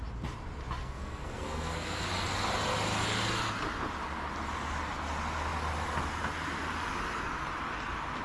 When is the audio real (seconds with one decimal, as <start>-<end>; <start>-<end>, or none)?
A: 0.0-0.8; 2.1-8.2